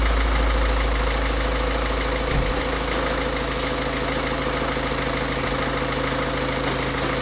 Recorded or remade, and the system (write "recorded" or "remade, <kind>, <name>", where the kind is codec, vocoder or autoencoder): recorded